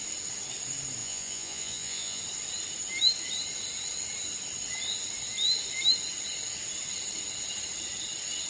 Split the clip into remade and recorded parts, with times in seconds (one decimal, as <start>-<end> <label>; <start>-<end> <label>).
0.0-1.0 recorded; 1.0-2.2 remade; 2.2-8.5 recorded